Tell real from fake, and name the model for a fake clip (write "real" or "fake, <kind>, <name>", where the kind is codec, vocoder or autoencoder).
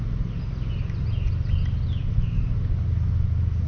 real